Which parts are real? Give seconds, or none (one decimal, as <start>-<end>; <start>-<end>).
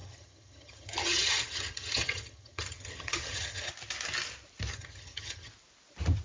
3.7-4.7; 5.5-6.2